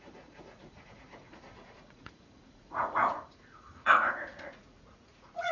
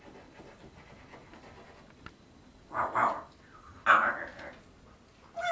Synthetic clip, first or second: first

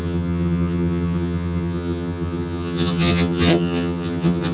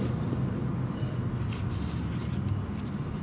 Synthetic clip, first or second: first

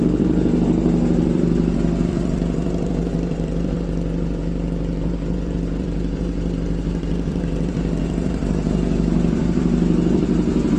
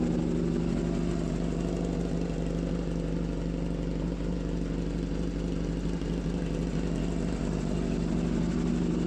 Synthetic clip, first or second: first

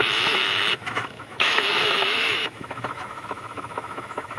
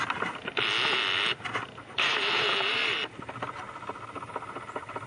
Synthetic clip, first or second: first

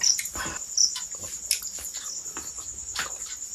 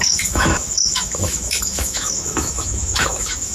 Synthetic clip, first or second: second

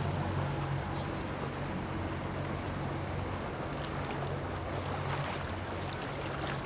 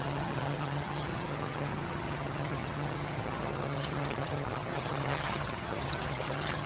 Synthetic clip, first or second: second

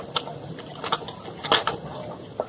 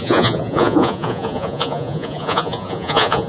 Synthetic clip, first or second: second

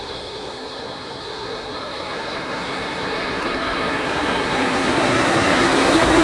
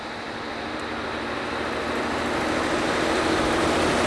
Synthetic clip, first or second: first